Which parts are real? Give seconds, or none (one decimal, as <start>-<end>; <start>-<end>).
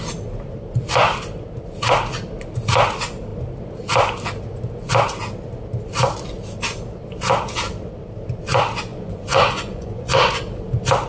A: 0.0-8.9; 10.4-11.1